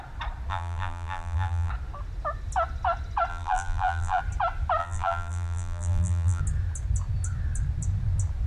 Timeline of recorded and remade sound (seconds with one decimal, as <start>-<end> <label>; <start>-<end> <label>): 0.0-0.5 recorded; 0.5-1.7 remade; 1.7-3.3 recorded; 3.3-4.2 remade; 4.2-4.8 recorded; 4.8-6.4 remade; 6.4-8.5 recorded